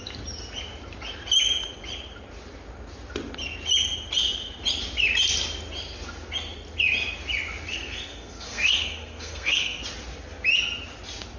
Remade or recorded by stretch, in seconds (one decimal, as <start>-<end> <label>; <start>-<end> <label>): 0.0-7.7 recorded; 7.7-9.8 remade; 9.8-11.4 recorded